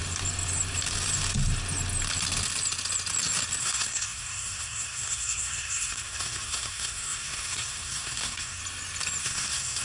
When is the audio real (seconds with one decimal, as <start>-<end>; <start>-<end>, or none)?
0.0-3.6; 8.6-9.2